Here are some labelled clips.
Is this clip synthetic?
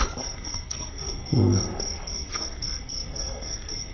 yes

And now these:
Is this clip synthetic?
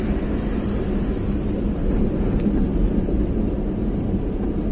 no